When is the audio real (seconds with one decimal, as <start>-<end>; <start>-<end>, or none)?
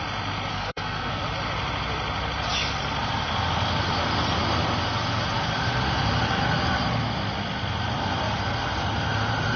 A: 0.0-0.5; 1.2-9.6